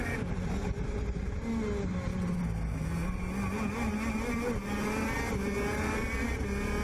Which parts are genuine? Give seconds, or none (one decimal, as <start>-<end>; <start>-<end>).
0.0-6.8